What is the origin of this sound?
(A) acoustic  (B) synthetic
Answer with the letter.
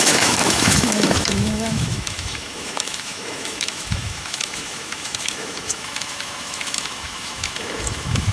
B